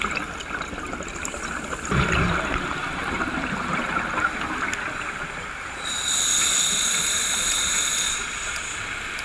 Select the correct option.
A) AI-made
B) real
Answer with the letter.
B